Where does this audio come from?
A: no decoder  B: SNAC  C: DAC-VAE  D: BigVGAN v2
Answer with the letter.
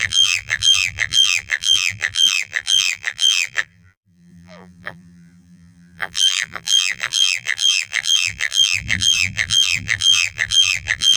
D